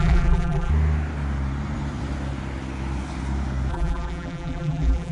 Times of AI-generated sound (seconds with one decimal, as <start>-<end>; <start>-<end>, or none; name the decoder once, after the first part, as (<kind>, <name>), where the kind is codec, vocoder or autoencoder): 0.0-0.7 (vocoder, BigVGAN v2); 3.7-5.1